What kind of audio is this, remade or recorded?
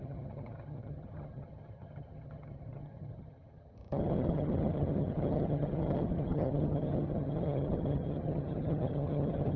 remade